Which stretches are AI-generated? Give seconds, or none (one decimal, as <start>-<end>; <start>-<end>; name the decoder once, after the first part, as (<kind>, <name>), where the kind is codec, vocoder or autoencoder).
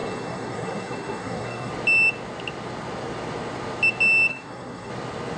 0.0-1.7 (codec, SNAC); 4.3-4.9